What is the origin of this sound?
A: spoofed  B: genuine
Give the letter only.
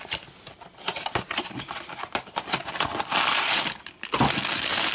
A